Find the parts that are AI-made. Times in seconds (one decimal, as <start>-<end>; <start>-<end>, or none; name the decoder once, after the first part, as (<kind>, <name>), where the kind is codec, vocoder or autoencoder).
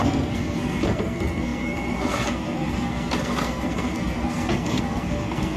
0.0-5.6 (codec, SNAC)